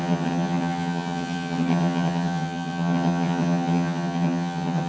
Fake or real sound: fake